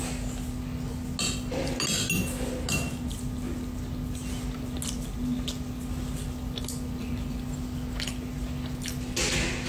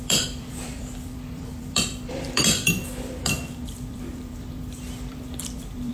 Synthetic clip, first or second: second